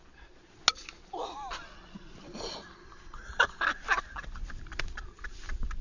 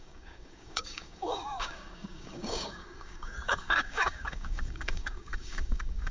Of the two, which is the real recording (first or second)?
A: first